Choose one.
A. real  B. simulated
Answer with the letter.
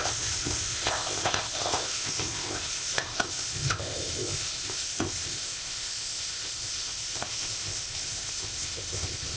B